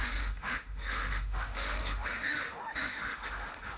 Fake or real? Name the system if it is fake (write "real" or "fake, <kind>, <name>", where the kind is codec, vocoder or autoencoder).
fake, autoencoder, DAC-VAE